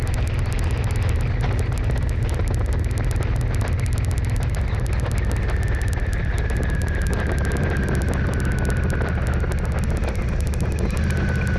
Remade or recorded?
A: recorded